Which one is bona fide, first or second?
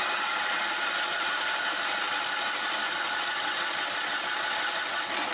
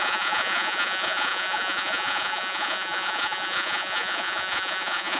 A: first